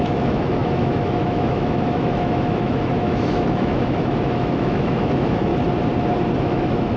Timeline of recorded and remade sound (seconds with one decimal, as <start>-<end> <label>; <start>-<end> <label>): 0.0-5.5 remade; 5.5-6.4 recorded; 6.4-7.0 remade